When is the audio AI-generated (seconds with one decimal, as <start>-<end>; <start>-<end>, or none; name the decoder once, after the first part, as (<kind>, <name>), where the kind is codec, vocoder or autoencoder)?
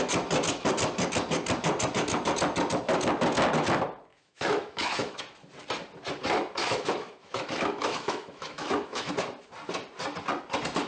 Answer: 4.1-5.2 (autoencoder, DAC-VAE); 6.6-9.1